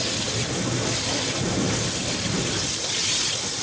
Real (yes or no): yes